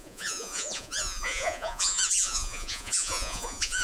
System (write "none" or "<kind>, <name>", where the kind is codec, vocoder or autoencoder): vocoder, Vocos